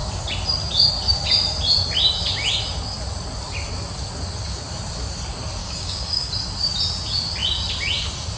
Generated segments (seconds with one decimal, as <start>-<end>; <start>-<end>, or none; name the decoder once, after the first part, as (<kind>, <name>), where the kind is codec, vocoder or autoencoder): 5.6-6.3 (codec, DAC)